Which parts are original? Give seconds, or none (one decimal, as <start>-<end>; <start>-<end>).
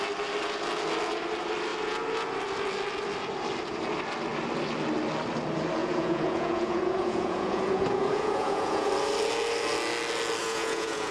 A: 0.0-5.8; 8.9-10.4